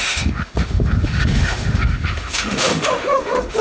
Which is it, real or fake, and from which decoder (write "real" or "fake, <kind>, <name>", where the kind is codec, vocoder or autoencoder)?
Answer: fake, autoencoder, DAC-VAE